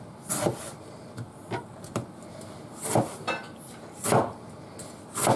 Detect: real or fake real